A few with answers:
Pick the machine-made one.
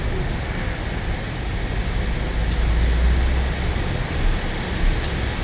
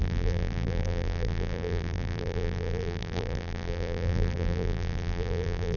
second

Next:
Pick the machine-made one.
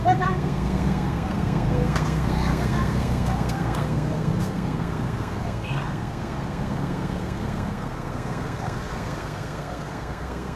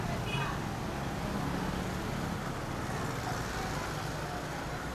first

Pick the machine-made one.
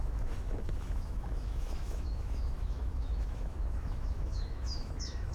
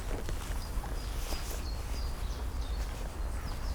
first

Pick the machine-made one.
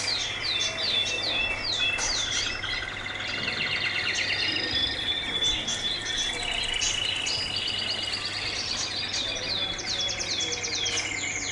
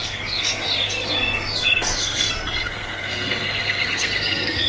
second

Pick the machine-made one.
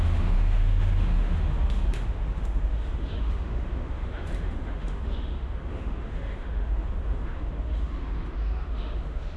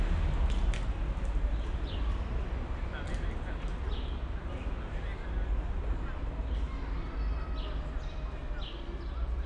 first